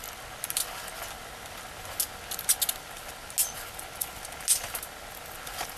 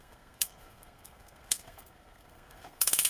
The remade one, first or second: second